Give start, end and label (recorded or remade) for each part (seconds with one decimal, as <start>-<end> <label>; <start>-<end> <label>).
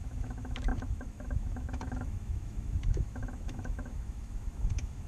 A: 0.0-5.1 remade